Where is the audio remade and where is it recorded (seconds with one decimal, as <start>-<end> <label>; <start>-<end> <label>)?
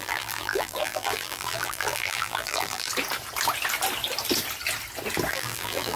0.0-2.9 remade; 2.9-5.3 recorded; 5.3-6.0 remade